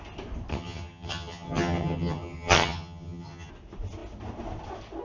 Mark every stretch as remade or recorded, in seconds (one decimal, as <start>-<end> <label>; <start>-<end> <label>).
0.0-0.5 recorded; 0.5-3.5 remade; 3.5-5.0 recorded